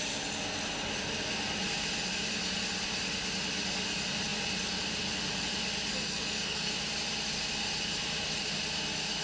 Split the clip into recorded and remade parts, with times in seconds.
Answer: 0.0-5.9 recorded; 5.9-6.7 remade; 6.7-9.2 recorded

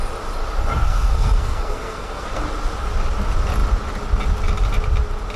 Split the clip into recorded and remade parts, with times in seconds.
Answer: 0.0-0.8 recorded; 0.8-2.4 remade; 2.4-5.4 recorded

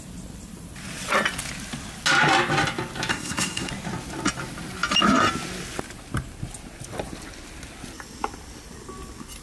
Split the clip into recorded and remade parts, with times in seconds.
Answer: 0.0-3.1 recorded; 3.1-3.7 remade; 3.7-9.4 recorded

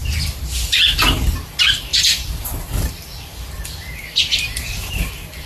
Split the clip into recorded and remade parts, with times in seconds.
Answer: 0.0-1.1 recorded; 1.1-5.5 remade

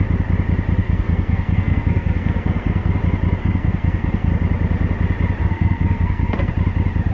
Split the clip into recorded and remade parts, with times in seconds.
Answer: 0.0-0.8 recorded; 0.8-3.0 remade; 3.0-3.4 recorded; 3.4-4.3 remade; 4.3-5.4 recorded; 5.4-6.5 remade; 6.5-7.1 recorded

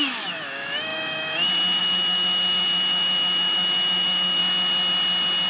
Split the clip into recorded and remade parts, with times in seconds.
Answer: 0.0-4.4 remade; 4.4-5.5 recorded

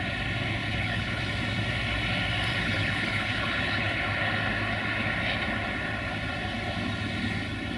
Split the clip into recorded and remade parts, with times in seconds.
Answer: 0.0-0.6 recorded; 0.6-1.2 remade; 1.2-2.5 recorded; 2.5-4.0 remade; 4.0-7.8 recorded